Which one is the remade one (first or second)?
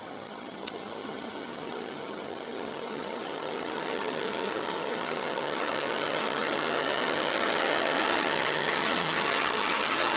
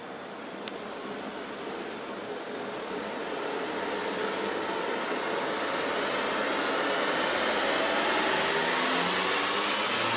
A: first